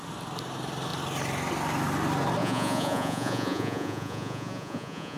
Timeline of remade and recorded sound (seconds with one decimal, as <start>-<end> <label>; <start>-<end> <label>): 0.0-2.4 recorded; 2.4-5.2 remade